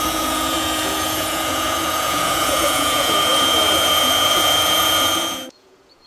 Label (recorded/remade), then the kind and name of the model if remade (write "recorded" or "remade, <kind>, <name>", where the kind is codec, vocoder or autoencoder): remade, vocoder, Vocos